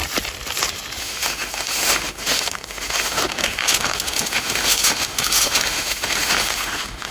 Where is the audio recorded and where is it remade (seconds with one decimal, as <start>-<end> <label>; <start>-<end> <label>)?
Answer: 0.0-1.0 recorded; 1.0-7.1 remade